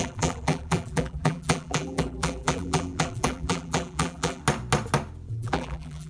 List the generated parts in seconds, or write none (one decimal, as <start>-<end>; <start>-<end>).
0.0-4.4; 5.3-6.1